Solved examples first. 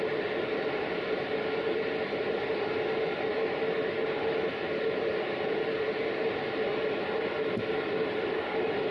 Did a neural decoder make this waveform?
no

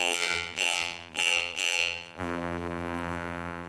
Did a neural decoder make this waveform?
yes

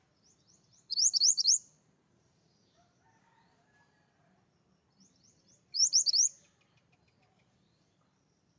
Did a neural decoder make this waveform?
yes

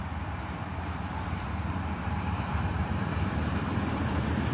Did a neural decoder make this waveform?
yes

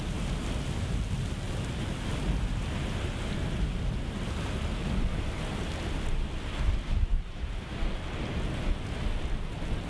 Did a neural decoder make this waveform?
no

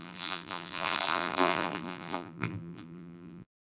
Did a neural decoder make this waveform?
yes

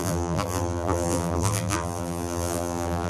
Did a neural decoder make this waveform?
yes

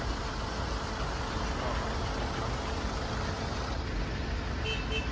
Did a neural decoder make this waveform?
no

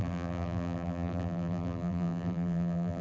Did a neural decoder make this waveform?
yes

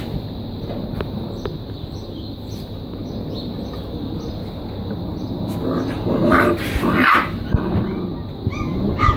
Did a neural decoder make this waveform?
no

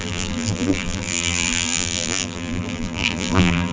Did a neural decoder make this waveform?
yes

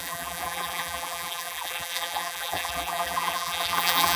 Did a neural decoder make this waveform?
yes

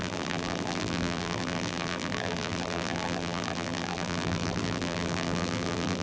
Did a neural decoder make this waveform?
yes